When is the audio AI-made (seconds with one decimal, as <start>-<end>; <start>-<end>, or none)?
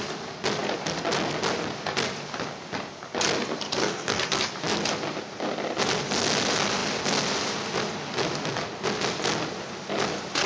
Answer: 3.8-4.5